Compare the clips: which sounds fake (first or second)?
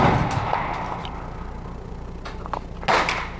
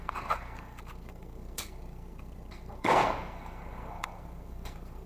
second